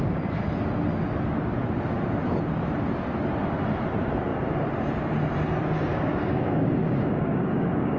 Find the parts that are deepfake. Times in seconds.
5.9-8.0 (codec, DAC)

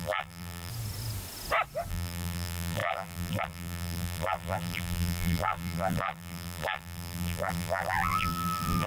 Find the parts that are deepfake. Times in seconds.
0.0-0.7 (vocoder, BigVGAN v2); 1.9-8.9

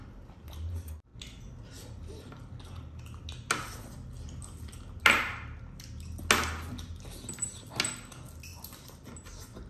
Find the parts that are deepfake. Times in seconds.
none

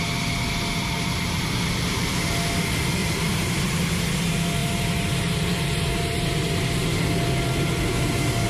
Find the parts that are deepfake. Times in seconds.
3.0-4.0 (vocoder, BigVGAN v2); 4.6-7.0

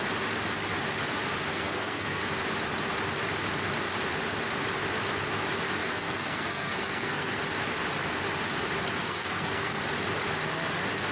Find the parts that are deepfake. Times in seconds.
1.5-2.2 (codec, SNAC); 5.8-7.4; 9.0-9.8